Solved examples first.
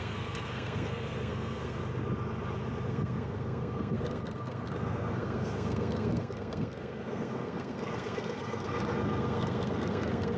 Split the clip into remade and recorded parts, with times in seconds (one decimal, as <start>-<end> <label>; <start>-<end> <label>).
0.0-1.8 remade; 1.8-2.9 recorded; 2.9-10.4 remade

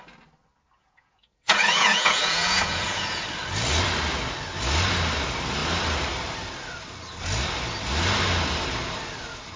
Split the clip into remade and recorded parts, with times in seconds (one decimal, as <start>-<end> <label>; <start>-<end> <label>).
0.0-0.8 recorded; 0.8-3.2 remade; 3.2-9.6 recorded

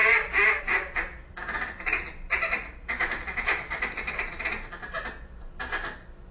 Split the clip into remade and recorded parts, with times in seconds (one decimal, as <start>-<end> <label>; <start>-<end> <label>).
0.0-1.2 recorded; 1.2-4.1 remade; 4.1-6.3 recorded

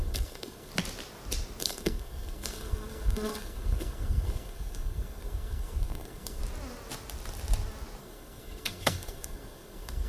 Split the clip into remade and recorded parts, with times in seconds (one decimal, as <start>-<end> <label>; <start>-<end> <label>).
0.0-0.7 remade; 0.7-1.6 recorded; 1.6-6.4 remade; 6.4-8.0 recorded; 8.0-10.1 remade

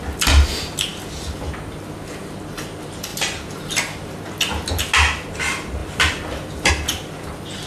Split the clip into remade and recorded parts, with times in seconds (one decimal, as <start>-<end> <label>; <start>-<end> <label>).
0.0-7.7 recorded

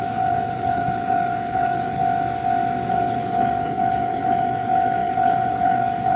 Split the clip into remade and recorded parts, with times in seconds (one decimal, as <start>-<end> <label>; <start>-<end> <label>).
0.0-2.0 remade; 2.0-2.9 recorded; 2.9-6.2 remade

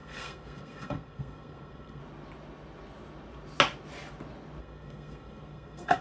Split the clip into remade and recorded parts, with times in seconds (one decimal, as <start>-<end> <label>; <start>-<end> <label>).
0.0-2.0 remade; 2.0-4.6 recorded; 4.6-6.0 remade

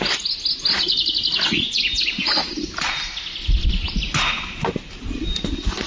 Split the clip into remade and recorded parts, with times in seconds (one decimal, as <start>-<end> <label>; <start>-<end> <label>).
0.0-1.5 recorded; 1.5-2.6 remade; 2.6-5.9 recorded